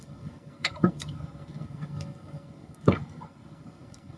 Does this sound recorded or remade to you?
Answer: remade